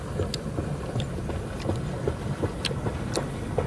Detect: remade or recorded recorded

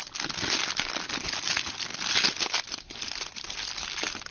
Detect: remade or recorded recorded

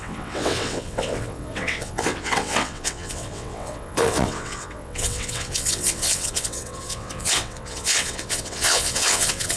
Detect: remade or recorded remade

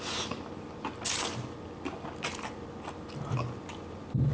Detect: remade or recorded recorded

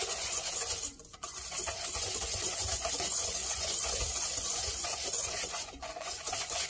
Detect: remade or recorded remade